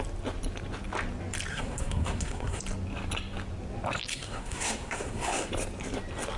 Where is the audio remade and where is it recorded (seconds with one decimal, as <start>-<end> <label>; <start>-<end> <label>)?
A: 0.0-1.5 recorded; 1.5-2.6 remade; 2.6-4.1 recorded; 4.1-5.5 remade; 5.5-6.4 recorded